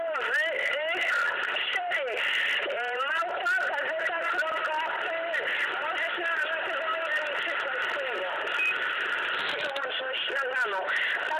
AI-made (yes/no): no